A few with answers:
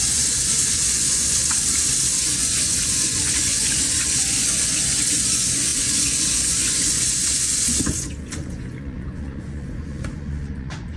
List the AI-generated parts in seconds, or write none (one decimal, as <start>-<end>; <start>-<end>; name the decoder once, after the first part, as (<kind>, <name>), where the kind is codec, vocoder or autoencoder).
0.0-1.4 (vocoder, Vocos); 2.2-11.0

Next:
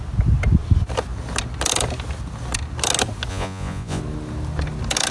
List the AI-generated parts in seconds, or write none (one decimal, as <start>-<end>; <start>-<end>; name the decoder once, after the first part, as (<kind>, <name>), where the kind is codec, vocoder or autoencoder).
3.3-4.0 (vocoder, Vocos)

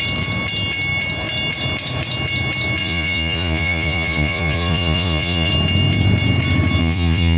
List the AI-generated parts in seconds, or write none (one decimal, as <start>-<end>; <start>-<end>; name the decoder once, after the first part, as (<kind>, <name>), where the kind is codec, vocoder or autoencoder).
2.8-5.5 (vocoder, Vocos); 6.8-7.4